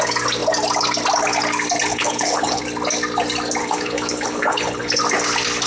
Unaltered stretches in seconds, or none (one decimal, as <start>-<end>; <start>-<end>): 0.0-1.9; 2.6-3.6; 5.0-5.7